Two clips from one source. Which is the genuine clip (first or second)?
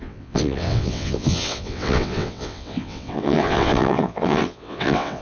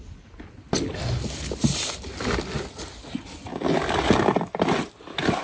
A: second